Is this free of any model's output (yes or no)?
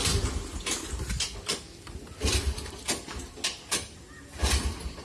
yes